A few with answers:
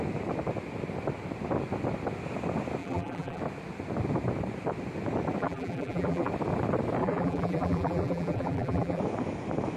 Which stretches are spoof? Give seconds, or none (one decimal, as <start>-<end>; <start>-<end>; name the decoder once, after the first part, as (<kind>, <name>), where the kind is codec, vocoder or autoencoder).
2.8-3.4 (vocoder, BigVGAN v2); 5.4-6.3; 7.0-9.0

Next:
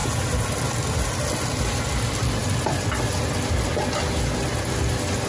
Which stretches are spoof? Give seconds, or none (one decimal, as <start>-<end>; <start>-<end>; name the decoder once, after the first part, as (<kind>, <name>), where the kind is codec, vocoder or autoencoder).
none

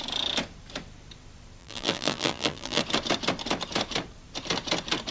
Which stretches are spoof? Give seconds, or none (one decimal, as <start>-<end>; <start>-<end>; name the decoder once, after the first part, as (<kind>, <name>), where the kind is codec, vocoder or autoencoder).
1.6-2.8 (vocoder, BigVGAN v2)

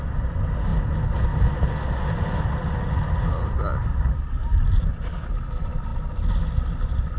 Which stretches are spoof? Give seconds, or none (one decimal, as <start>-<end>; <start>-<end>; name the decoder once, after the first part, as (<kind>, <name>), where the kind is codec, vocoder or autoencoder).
none

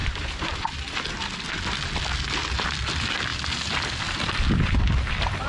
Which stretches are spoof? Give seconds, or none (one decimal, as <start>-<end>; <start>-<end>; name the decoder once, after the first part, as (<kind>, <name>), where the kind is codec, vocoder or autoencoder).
0.0-1.0 (vocoder, BigVGAN v2)

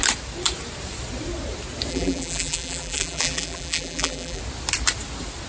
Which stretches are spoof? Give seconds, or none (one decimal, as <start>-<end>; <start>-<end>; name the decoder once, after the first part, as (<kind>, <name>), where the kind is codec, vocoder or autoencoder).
1.9-4.4 (vocoder, BigVGAN v2)

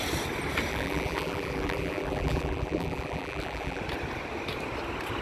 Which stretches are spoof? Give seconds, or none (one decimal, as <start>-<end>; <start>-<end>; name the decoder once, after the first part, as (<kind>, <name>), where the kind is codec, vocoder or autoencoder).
0.7-3.8 (vocoder, BigVGAN v2)

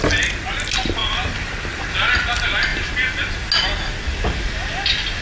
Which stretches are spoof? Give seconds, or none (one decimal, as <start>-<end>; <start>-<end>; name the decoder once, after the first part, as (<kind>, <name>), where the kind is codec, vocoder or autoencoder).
1.0-1.5 (vocoder, BigVGAN v2)